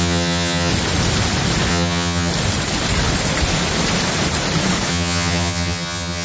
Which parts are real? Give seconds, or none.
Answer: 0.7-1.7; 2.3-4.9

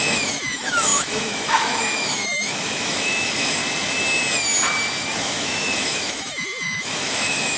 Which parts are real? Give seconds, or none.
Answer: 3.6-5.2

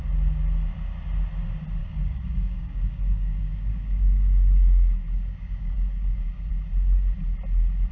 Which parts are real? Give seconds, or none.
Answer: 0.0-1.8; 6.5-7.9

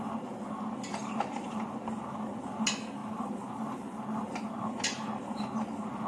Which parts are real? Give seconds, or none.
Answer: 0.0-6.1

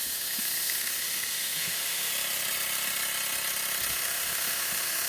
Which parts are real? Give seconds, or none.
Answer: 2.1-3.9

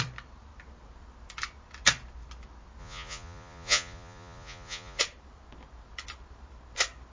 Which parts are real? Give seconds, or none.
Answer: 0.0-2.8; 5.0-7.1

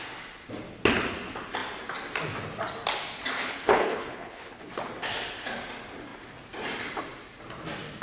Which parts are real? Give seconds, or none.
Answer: 0.0-3.4; 4.7-8.0

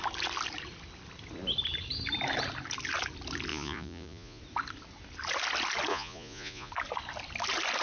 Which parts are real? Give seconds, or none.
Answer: 0.0-3.5; 4.4-5.9; 6.7-7.8